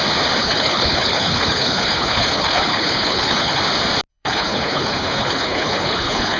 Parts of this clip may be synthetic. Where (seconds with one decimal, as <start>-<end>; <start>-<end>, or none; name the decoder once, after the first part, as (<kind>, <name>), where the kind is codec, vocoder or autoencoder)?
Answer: 0.4-3.6 (codec, HILCodec); 4.1-6.4